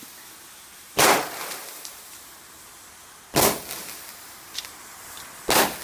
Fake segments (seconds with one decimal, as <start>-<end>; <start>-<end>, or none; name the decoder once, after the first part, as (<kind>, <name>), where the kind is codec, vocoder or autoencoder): 0.7-2.0 (vocoder, BigVGAN v2)